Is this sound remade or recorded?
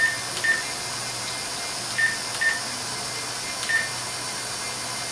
recorded